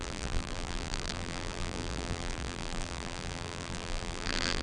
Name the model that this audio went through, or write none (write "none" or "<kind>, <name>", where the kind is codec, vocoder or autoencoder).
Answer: vocoder, BigVGAN v2